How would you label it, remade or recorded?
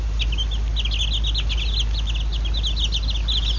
recorded